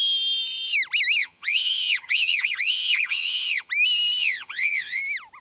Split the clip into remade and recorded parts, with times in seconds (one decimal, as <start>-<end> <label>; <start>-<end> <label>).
0.0-1.2 recorded; 1.2-3.7 remade; 3.7-4.2 recorded; 4.2-5.0 remade; 5.0-5.4 recorded